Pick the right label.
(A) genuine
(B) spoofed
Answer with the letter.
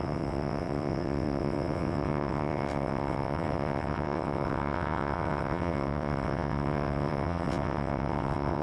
B